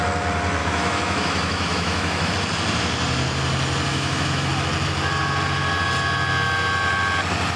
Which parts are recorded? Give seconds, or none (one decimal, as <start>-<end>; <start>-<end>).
0.0-0.6; 2.3-3.9; 4.5-7.6